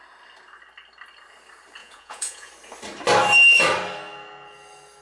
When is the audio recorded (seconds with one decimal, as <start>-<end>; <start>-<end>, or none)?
0.0-1.8; 2.5-5.0